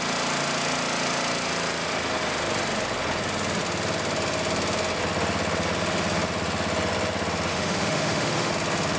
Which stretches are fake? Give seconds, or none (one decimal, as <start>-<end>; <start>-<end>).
7.5-8.5